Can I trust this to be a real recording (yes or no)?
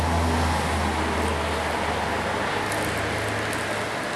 yes